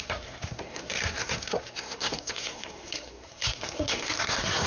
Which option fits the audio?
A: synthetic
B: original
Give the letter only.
A